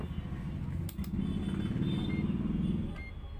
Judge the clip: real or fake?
real